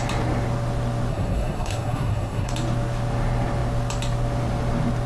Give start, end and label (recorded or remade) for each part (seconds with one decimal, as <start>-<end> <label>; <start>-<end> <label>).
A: 0.0-1.1 recorded; 1.1-2.5 remade; 2.5-5.1 recorded